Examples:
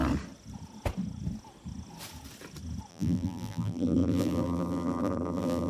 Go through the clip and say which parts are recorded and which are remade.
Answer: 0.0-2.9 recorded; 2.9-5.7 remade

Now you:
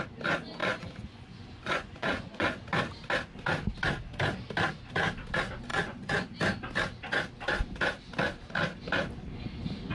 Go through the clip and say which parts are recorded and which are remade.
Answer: 0.0-0.6 recorded; 0.6-2.6 remade; 2.6-5.7 recorded; 5.7-6.4 remade; 6.4-9.9 recorded

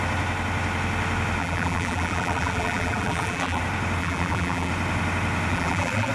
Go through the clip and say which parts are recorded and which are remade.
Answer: 0.0-1.4 recorded; 1.4-3.6 remade; 3.6-4.0 recorded; 4.0-4.7 remade; 4.7-5.5 recorded; 5.5-6.1 remade

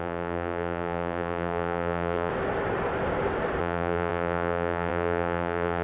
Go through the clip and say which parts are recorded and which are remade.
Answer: 0.0-2.3 remade; 2.3-3.6 recorded; 3.6-5.8 remade

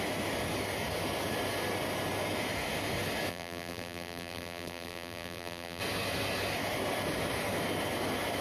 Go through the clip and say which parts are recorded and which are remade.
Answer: 0.0-3.3 recorded; 3.3-5.8 remade; 5.8-8.4 recorded